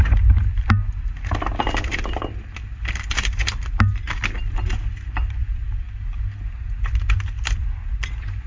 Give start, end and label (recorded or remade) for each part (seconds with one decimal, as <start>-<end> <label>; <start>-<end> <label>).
0.0-8.5 recorded